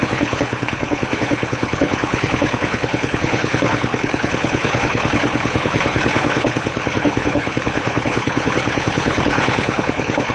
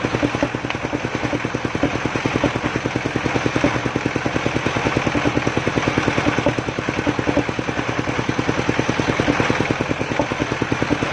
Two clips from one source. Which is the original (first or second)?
second